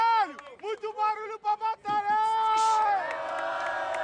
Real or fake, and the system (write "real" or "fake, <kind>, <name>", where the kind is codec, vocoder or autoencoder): real